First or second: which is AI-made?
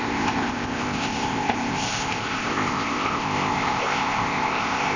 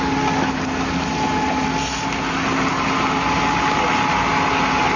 first